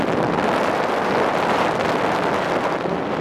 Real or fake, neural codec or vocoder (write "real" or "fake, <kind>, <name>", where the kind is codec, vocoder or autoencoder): real